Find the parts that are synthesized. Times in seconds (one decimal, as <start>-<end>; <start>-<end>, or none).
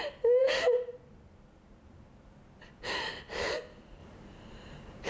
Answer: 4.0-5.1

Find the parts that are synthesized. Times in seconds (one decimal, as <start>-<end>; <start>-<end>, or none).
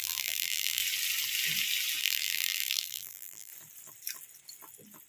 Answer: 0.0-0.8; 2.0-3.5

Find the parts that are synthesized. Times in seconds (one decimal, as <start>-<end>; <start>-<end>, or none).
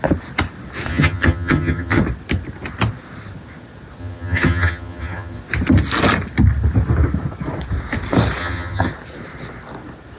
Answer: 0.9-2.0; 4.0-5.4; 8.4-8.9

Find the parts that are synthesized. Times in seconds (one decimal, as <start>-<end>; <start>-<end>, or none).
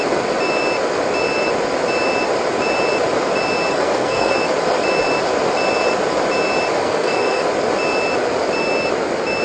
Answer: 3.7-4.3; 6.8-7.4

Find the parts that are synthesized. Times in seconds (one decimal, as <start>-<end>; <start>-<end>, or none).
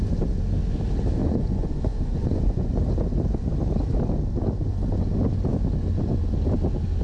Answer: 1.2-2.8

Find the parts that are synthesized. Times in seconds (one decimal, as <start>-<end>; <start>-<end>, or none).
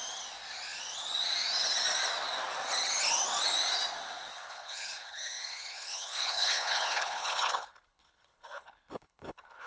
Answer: 4.3-9.7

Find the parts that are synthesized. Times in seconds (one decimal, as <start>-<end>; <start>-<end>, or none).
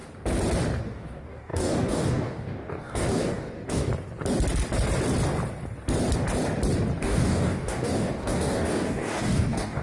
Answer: 0.8-3.9; 7.0-9.8